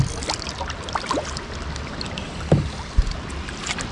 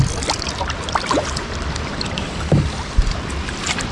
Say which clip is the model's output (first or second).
second